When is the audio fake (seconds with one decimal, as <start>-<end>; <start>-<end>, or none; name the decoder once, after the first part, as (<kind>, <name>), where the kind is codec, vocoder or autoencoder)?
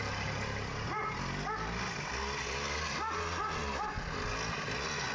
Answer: none